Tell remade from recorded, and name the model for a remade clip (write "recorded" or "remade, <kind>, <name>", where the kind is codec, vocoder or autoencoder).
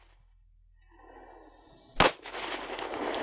recorded